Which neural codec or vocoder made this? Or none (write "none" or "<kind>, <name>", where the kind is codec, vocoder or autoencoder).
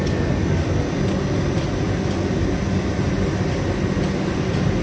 none